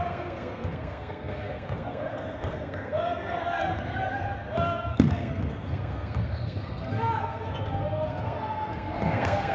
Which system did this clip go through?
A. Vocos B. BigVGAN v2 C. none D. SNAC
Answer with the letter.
D